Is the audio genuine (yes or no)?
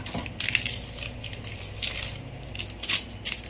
yes